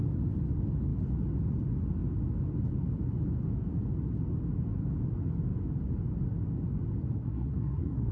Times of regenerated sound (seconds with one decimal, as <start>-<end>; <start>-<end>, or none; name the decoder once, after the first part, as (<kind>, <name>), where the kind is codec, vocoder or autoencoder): 7.1-8.1 (codec, SNAC)